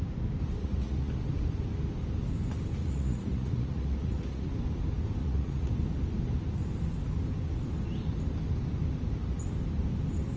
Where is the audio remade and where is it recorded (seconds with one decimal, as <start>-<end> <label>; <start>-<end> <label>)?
0.0-0.6 recorded; 0.6-1.1 remade; 1.1-2.8 recorded; 2.8-4.5 remade; 4.5-5.2 recorded; 5.2-5.7 remade; 5.7-10.4 recorded